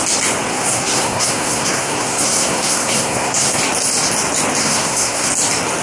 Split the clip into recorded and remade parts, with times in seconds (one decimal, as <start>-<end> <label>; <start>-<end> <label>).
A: 0.0-0.5 recorded; 0.5-3.6 remade; 3.6-4.6 recorded; 4.6-5.3 remade; 5.3-5.8 recorded